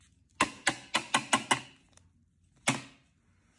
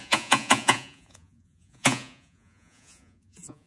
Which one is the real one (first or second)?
first